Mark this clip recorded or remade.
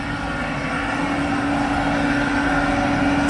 recorded